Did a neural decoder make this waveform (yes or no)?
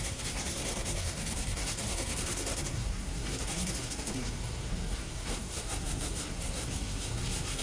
yes